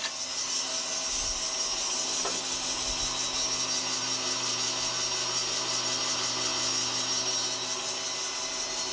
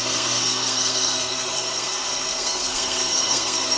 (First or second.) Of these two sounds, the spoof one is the second